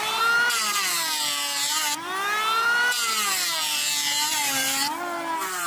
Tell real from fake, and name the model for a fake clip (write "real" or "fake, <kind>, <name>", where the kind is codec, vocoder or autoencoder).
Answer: fake, vocoder, BigVGAN v2